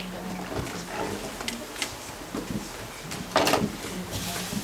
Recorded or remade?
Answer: recorded